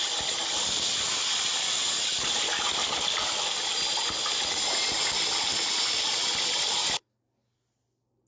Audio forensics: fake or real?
real